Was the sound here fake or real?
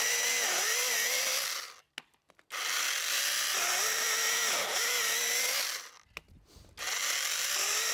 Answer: real